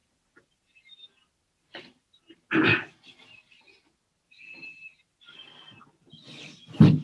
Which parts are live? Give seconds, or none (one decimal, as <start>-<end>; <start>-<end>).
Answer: 0.0-7.0